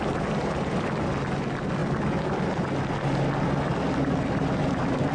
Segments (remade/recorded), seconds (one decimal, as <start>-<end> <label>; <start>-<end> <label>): 0.0-5.1 recorded